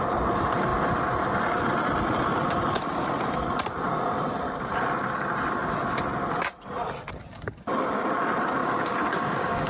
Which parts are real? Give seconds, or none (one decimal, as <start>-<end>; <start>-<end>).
0.0-8.6